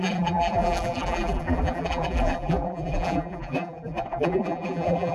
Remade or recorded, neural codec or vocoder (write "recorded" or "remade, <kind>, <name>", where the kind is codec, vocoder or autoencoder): remade, vocoder, BigVGAN v2